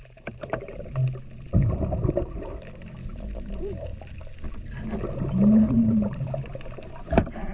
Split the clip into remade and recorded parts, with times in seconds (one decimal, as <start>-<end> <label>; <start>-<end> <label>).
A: 0.0-1.0 remade; 1.0-2.4 recorded; 2.4-3.9 remade; 3.9-5.7 recorded; 5.7-7.5 remade